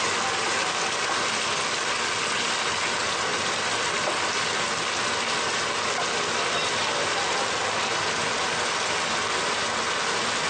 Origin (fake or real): real